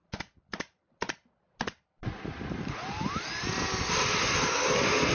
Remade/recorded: recorded